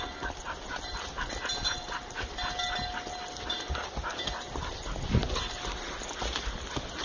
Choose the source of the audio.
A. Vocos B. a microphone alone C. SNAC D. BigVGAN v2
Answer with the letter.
B